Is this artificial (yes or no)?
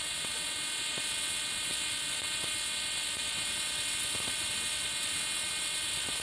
yes